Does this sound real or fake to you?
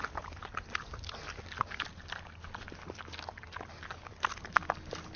real